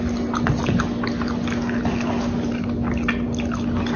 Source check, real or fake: real